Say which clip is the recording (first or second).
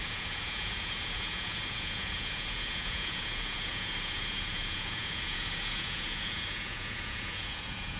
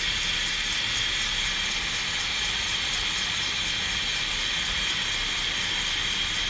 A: second